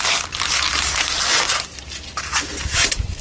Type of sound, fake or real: real